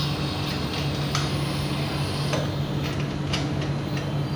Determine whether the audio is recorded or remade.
recorded